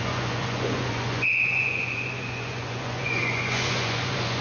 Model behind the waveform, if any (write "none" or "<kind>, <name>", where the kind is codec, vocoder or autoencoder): vocoder, Vocos